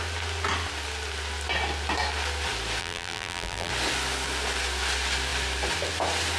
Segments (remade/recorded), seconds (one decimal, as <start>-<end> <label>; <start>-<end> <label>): 0.0-2.8 recorded; 2.8-3.7 remade; 3.7-6.4 recorded